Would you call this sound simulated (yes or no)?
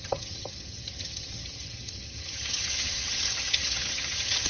yes